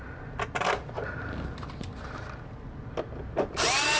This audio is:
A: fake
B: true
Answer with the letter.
B